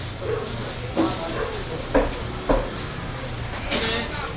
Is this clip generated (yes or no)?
no